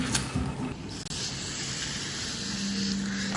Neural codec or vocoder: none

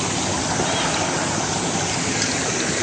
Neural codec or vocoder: none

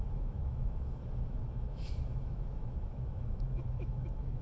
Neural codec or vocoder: autoencoder, DAC-VAE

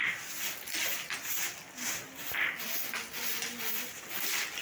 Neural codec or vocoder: none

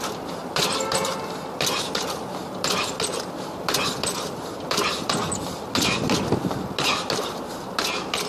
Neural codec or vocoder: none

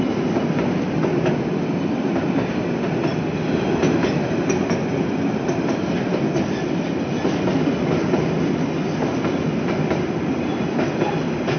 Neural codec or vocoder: none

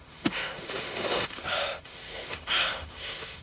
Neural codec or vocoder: autoencoder, DAC-VAE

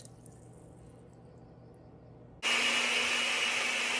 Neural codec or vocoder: none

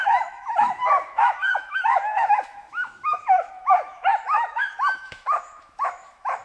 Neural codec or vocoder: autoencoder, DAC-VAE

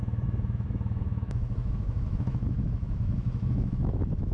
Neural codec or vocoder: autoencoder, DAC-VAE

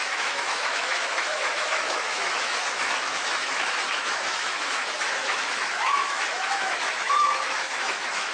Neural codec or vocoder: autoencoder, DAC-VAE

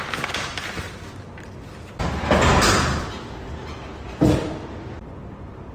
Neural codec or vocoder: none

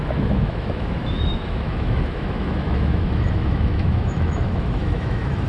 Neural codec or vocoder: autoencoder, DAC-VAE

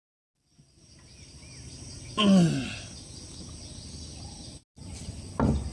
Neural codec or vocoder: none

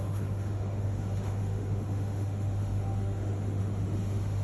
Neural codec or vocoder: autoencoder, DAC-VAE